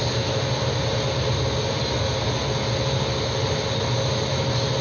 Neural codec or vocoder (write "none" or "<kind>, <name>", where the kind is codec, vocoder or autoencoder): none